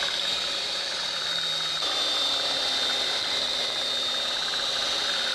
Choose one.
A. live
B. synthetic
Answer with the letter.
A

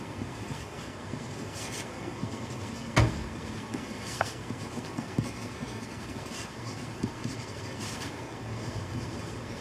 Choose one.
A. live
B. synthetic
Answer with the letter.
B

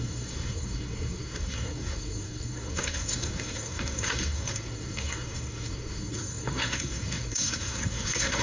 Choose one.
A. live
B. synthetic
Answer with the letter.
B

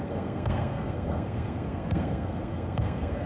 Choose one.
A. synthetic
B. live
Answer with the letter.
A